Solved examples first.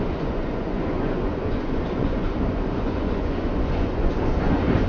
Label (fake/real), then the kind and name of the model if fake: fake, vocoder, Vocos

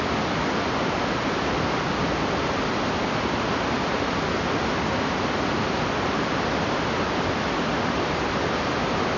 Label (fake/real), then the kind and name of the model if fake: real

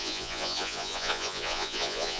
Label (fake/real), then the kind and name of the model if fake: fake, vocoder, Vocos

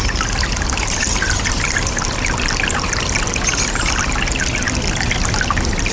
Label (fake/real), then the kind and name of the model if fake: real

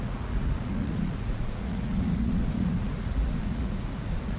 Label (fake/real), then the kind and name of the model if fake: fake, vocoder, Vocos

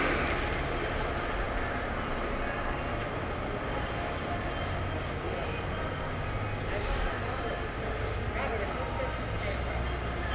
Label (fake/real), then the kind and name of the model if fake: real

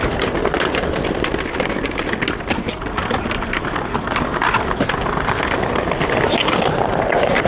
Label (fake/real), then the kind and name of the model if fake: real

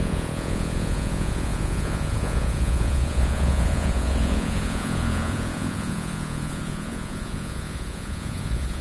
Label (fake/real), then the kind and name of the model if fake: fake, vocoder, Vocos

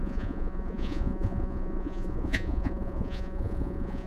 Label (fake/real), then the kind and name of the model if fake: fake, vocoder, Vocos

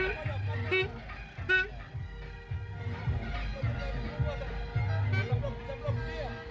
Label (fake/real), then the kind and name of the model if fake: real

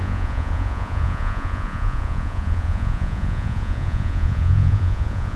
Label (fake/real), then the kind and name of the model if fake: fake, vocoder, Vocos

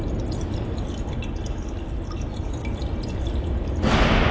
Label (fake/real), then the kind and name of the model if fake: real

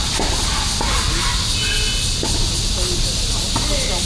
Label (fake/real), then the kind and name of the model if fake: real